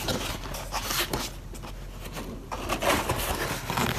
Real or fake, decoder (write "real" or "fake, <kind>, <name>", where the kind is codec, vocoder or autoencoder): real